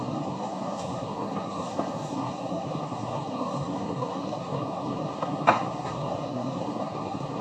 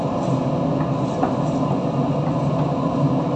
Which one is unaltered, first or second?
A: second